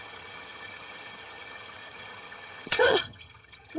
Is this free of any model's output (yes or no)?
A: no